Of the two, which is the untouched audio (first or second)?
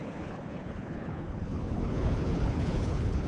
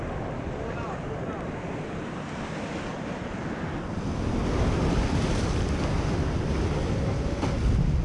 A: second